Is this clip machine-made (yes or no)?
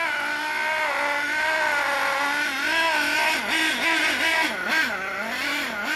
no